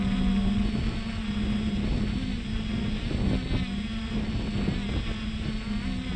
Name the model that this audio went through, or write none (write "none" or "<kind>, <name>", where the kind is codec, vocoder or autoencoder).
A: none